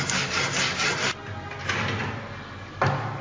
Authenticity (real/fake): real